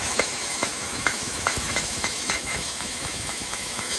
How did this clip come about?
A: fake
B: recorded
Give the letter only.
A